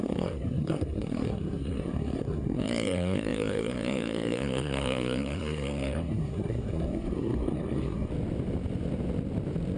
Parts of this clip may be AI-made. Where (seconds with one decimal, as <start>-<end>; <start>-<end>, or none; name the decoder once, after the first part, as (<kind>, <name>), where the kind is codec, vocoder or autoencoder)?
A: 0.0-8.1 (codec, SNAC)

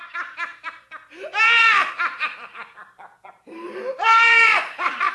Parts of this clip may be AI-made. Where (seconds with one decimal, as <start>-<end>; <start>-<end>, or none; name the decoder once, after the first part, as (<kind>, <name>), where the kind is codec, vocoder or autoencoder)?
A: 1.6-5.1 (vocoder, BigVGAN v2)

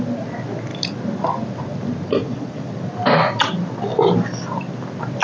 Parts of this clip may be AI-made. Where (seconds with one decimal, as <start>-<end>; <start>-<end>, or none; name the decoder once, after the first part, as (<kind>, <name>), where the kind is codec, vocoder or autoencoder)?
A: 2.2-2.7 (vocoder, Vocos)

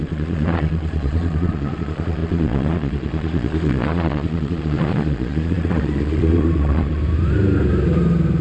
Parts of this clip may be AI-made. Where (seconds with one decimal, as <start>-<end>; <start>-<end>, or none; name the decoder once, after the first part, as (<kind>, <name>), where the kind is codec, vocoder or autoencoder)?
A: 0.0-7.0 (vocoder, Vocos)

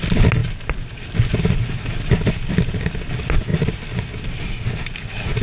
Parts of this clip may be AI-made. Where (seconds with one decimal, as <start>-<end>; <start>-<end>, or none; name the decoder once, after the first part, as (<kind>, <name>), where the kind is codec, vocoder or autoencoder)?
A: none

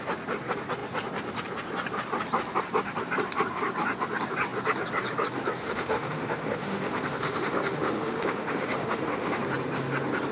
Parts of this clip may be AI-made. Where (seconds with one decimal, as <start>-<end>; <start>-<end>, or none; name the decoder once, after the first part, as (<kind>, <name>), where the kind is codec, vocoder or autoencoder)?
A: 5.6-9.4 (autoencoder, DAC-VAE)